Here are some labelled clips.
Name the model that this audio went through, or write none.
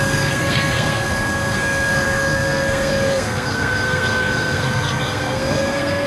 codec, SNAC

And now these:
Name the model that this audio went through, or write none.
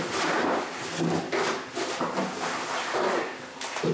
none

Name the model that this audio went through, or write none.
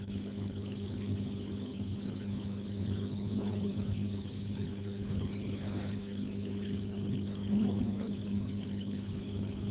codec, HILCodec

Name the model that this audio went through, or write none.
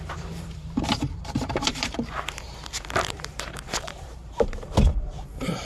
vocoder, BigVGAN v2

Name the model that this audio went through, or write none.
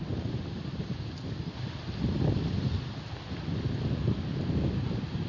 none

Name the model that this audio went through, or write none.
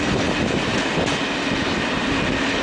none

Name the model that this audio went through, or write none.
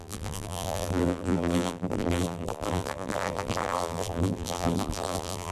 vocoder, BigVGAN v2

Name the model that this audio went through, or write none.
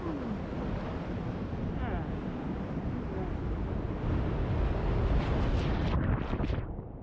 none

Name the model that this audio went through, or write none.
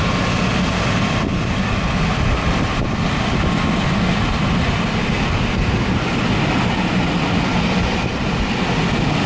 none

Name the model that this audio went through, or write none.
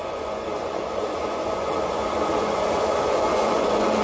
vocoder, Vocos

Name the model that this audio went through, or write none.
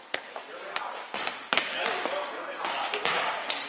none